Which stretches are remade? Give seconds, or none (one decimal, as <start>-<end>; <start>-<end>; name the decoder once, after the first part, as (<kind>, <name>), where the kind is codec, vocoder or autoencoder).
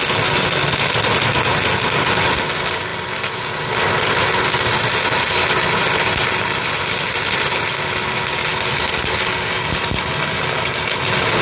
none